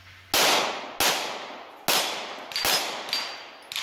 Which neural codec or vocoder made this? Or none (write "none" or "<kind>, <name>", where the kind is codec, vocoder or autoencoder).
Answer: none